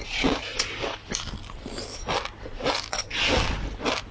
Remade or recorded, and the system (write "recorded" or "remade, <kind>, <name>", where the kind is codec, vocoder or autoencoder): recorded